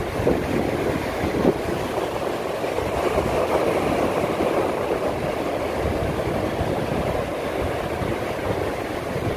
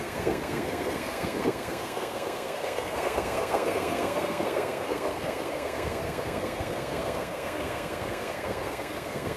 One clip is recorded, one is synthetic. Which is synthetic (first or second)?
second